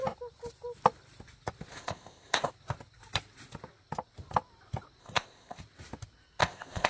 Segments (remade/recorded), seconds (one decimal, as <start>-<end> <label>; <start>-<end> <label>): 0.0-1.7 recorded; 1.7-2.5 remade; 2.5-5.0 recorded; 5.0-5.6 remade; 5.6-6.4 recorded; 6.4-6.9 remade